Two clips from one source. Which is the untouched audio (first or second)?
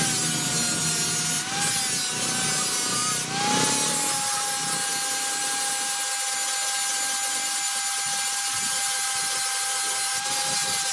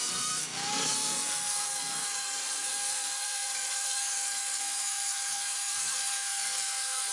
first